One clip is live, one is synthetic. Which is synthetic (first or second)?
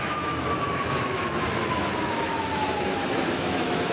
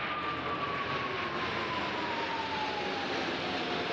first